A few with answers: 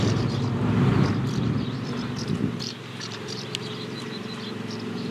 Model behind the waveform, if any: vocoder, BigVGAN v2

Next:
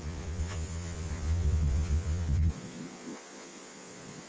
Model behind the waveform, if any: vocoder, Vocos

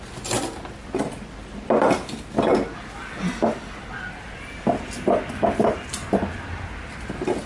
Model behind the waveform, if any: none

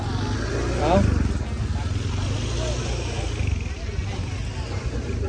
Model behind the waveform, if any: none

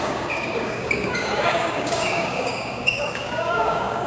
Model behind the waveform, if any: codec, DAC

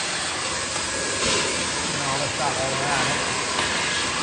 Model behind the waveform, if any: none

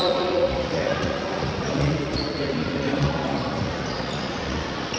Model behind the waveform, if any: vocoder, Vocos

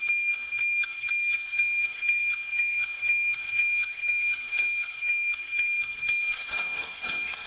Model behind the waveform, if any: codec, SNAC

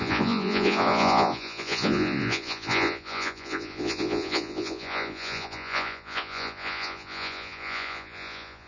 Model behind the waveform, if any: vocoder, Vocos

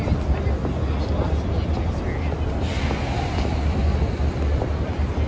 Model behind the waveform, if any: none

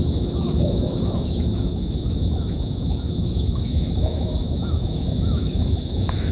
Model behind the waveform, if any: autoencoder, DAC-VAE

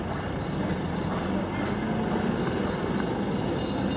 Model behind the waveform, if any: none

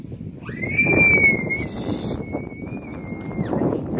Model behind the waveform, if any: none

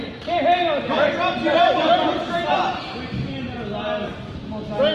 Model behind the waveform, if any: none